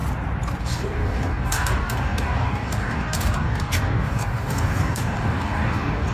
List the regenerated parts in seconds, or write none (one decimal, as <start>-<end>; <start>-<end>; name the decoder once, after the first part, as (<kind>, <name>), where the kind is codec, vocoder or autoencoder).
0.6-6.1 (codec, DAC)